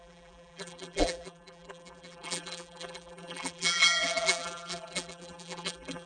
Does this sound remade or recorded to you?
remade